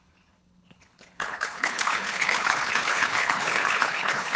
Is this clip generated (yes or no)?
yes